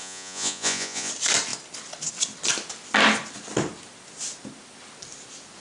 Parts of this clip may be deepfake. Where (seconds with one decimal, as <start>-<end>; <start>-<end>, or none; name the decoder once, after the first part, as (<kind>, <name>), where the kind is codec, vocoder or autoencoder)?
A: 0.0-1.1 (vocoder, Vocos)